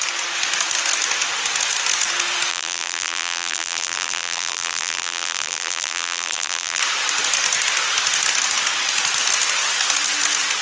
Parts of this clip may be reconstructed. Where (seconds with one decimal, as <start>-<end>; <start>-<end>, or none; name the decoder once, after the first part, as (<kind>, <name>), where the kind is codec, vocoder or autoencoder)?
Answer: 2.5-6.8 (vocoder, BigVGAN v2)